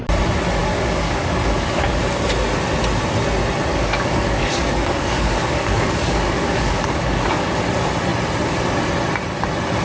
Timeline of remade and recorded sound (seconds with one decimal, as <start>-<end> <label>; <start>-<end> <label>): 0.0-0.6 recorded; 0.6-2.0 remade; 2.0-3.7 recorded; 3.7-7.5 remade; 7.5-9.8 recorded